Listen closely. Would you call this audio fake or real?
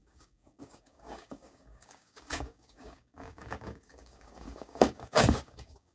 fake